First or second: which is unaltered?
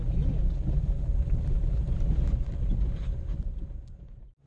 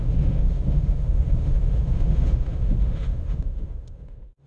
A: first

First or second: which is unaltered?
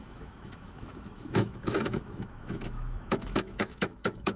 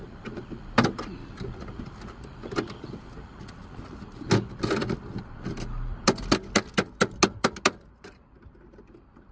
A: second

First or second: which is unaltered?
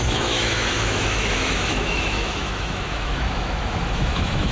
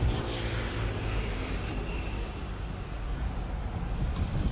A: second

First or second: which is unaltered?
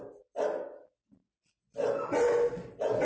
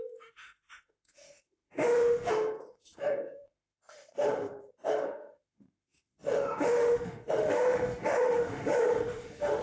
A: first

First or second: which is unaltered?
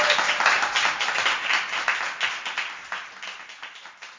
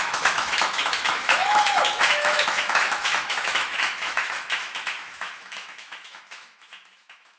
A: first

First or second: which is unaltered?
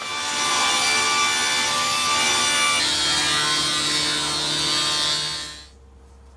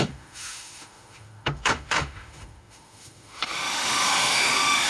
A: first